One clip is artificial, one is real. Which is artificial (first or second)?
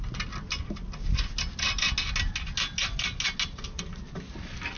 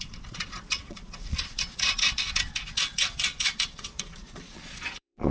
second